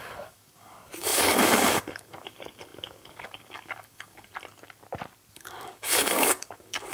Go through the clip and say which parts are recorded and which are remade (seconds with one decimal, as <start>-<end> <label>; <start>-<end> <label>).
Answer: 0.0-4.3 remade; 4.3-5.3 recorded; 5.3-6.9 remade